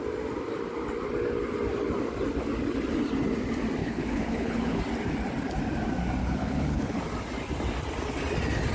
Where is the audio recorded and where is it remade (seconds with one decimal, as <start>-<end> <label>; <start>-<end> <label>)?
0.0-3.8 recorded; 3.8-4.8 remade; 4.8-6.2 recorded; 6.2-7.0 remade; 7.0-8.7 recorded